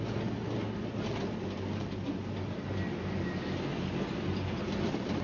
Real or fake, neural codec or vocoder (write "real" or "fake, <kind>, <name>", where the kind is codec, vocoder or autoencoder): real